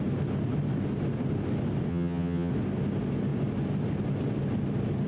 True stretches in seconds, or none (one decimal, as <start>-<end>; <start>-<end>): 0.0-1.9; 2.5-5.1